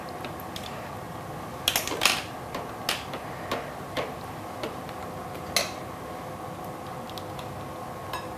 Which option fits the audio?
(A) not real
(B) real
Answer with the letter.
B